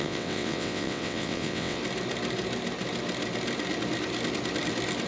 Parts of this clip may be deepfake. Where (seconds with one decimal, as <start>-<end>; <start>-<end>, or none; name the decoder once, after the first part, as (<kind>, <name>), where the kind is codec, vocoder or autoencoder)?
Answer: 0.0-1.8 (vocoder, WaveNeXt)